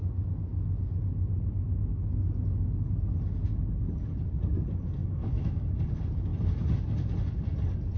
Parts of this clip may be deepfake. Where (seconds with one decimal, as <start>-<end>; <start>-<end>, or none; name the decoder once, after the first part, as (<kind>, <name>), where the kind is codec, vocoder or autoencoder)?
5.0-5.8 (autoencoder, DAC-VAE)